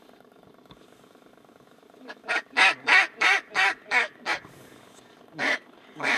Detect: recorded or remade remade